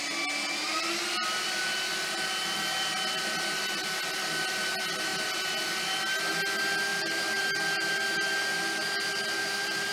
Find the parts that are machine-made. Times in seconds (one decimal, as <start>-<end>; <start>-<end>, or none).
6.9-9.9